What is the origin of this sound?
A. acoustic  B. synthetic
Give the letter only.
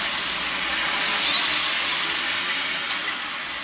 A